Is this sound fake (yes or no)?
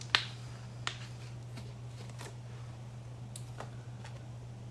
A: no